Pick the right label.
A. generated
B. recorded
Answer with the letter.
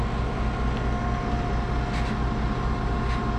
B